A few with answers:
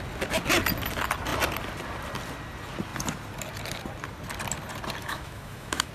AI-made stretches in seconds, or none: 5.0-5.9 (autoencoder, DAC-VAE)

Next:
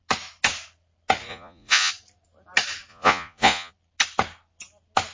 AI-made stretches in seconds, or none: 1.3-1.9 (vocoder, Vocos); 2.9-3.7

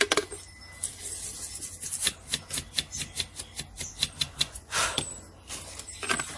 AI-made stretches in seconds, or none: 4.2-4.8 (vocoder, Vocos)